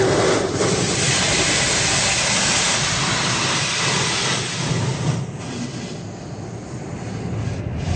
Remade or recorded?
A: recorded